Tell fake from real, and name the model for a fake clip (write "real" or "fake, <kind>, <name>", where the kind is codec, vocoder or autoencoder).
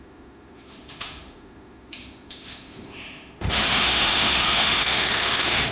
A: fake, autoencoder, DAC-VAE